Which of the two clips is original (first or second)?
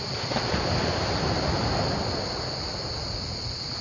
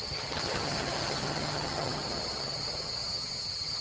first